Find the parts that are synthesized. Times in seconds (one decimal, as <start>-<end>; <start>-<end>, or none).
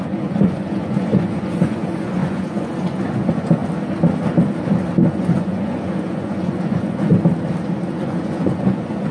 0.0-3.6; 5.1-7.1; 7.9-9.1